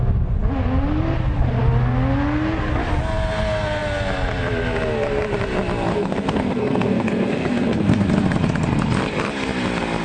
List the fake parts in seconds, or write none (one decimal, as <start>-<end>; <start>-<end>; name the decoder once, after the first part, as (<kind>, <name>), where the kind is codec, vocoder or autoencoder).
5.9-8.1 (codec, SNAC)